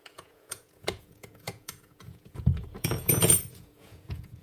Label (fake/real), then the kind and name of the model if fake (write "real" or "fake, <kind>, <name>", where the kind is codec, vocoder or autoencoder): fake, vocoder, Vocos